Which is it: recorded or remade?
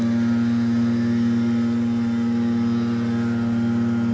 recorded